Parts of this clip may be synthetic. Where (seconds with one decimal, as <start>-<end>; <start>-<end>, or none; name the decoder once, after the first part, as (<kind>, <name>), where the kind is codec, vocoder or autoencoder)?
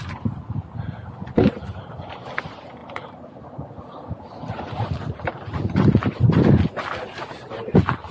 none